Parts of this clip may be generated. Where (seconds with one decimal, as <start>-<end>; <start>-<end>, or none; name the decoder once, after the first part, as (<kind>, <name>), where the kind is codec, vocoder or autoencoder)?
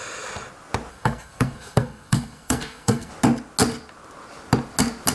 0.9-3.1 (codec, SNAC)